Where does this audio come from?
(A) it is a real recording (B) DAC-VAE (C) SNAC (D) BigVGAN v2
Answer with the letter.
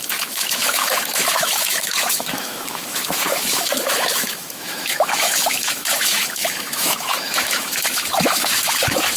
B